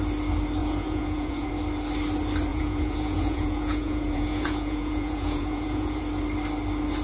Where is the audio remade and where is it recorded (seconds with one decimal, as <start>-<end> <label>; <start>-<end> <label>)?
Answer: 0.0-0.6 recorded; 0.6-1.5 remade; 1.5-2.5 recorded; 2.5-6.0 remade; 6.0-7.0 recorded